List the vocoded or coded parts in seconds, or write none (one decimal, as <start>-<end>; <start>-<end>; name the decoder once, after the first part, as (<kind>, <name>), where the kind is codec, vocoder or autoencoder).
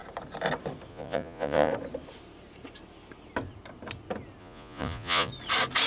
0.9-1.7 (vocoder, Vocos); 4.4-5.3